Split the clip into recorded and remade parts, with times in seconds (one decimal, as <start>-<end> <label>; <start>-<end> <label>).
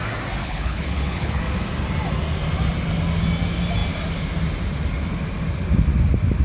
0.0-0.4 recorded; 0.4-1.4 remade; 1.4-6.4 recorded